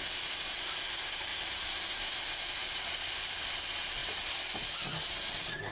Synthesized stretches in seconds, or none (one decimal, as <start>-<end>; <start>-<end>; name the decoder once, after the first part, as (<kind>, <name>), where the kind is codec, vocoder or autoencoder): none